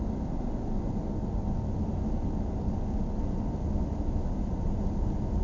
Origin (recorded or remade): recorded